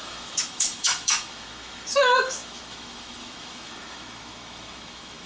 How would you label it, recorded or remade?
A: remade